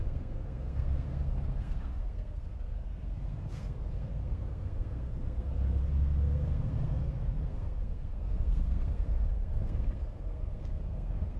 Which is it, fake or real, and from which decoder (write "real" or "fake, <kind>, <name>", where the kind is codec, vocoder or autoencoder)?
fake, codec, SNAC